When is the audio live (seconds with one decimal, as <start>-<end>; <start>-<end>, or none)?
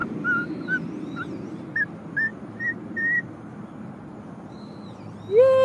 0.0-2.3; 3.2-3.7; 4.2-5.6